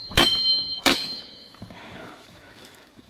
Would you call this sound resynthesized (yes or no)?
yes